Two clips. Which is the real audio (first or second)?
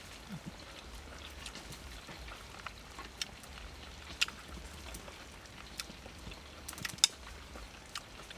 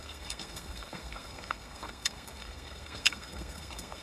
first